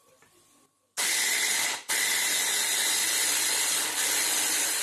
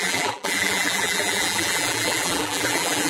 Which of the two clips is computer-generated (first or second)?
second